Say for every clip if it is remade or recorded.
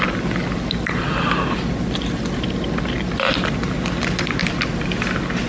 recorded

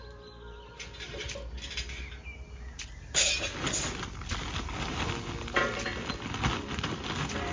recorded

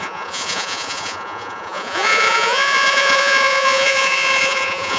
remade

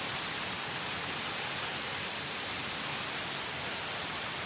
recorded